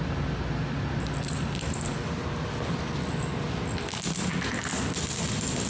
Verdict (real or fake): real